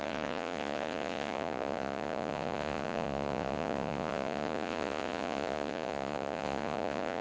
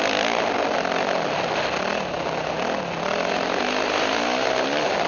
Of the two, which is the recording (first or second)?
second